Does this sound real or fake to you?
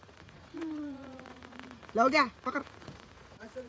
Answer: fake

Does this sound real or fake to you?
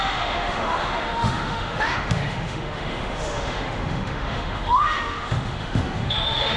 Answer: fake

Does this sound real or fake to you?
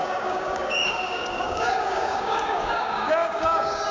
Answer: fake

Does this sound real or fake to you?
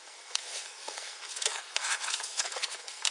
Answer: fake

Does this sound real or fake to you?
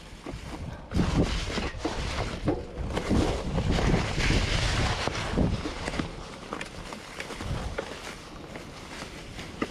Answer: real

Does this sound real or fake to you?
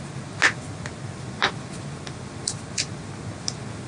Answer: real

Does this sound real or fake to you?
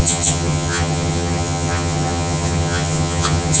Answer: fake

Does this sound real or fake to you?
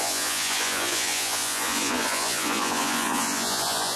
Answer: fake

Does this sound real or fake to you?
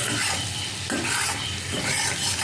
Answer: real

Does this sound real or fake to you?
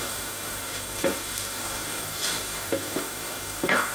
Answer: fake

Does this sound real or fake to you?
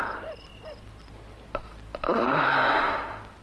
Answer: real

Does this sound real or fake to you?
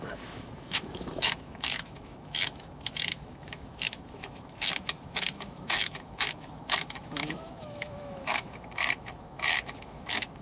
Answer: fake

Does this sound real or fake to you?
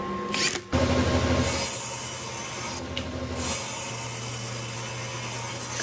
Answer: real